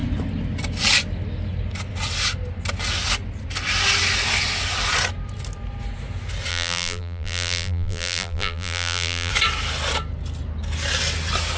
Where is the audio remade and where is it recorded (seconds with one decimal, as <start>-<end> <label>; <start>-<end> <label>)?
0.0-6.5 recorded; 6.5-9.3 remade; 9.3-11.6 recorded